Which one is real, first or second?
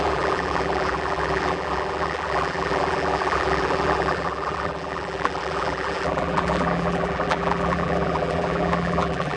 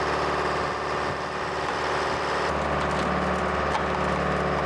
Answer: second